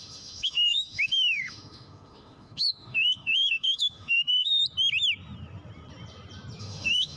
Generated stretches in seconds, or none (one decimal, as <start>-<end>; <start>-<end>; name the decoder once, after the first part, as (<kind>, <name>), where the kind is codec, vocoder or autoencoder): 0.0-4.6 (autoencoder, DAC-VAE); 6.6-7.2